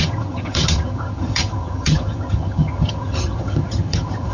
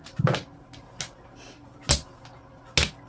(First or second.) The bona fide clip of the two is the second